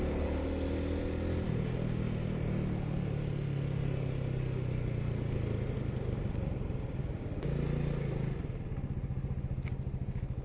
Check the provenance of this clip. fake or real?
real